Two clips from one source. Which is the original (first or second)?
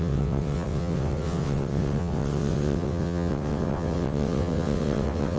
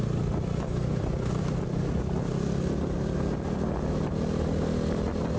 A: second